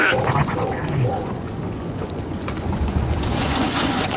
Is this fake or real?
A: fake